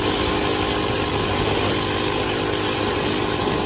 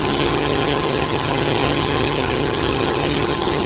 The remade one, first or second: second